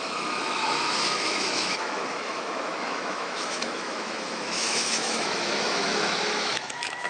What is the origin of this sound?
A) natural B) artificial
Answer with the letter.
B